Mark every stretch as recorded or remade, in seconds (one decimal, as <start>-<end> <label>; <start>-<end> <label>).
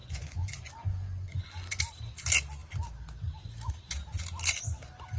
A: 0.0-1.8 remade; 1.8-5.2 recorded